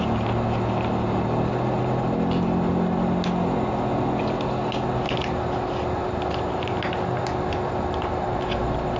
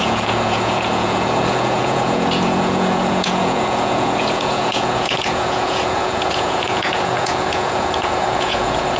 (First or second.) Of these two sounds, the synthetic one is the second